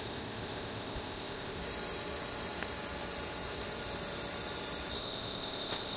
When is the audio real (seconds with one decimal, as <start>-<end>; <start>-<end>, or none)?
1.6-5.0